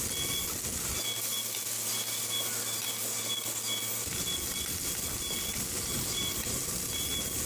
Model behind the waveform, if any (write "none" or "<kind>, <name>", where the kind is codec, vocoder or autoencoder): none